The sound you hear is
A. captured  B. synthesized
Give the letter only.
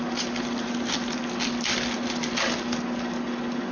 A